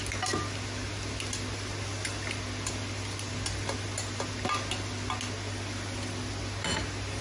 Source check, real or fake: real